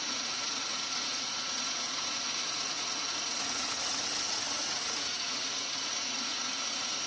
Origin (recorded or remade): remade